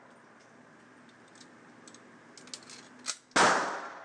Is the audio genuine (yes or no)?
yes